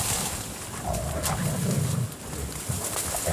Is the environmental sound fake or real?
real